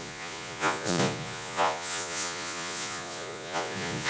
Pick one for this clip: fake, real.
fake